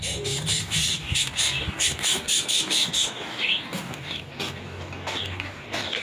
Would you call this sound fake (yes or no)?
yes